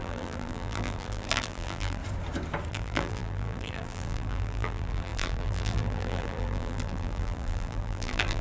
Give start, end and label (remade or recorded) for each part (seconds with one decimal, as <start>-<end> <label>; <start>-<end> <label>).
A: 0.0-2.0 remade; 2.0-2.7 recorded; 2.7-8.4 remade